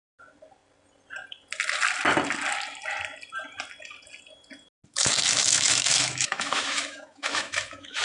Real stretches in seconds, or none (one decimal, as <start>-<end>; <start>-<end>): 0.0-4.9